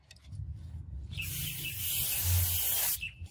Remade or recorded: recorded